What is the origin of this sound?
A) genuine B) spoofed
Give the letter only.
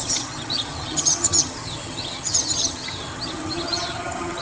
B